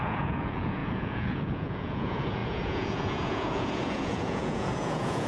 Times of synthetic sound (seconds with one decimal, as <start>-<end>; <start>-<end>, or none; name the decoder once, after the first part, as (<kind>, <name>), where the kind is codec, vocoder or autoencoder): 0.0-5.3 (vocoder, Vocos)